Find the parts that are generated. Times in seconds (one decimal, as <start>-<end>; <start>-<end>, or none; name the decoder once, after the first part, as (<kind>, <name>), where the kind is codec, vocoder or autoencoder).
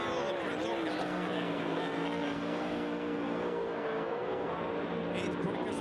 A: 1.0-4.5 (codec, SNAC)